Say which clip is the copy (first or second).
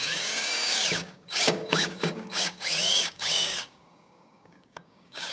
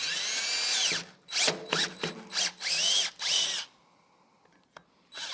first